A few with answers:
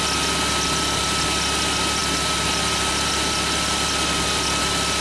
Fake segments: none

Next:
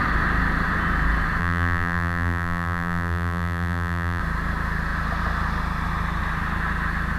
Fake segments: 1.4-4.2 (vocoder, BigVGAN v2)